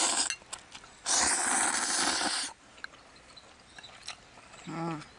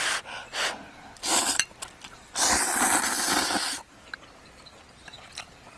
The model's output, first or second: second